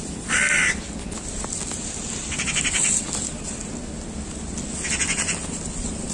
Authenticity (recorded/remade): recorded